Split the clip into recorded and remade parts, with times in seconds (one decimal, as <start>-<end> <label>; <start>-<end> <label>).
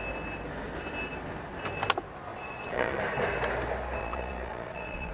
0.0-2.3 recorded; 2.3-3.0 remade; 3.0-4.0 recorded; 4.0-5.1 remade